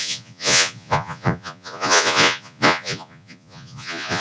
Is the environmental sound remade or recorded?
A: remade